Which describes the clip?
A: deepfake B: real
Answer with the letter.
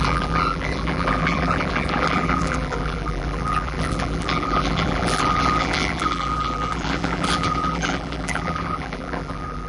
A